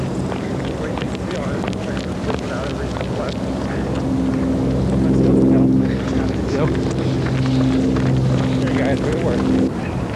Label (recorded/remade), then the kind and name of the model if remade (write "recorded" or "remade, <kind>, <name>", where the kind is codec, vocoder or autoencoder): recorded